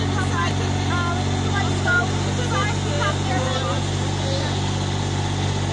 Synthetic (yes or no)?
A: no